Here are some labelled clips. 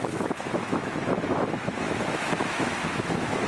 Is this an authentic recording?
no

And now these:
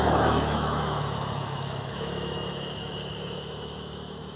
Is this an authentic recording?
no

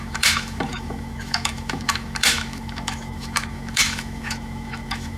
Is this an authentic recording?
no